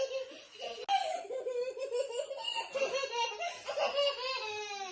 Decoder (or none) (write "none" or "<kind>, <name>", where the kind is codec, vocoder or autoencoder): none